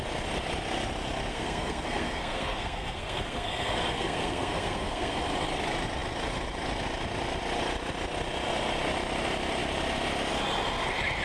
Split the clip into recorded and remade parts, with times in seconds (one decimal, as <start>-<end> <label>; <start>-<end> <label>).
0.0-1.3 recorded; 1.3-5.2 remade; 5.2-11.2 recorded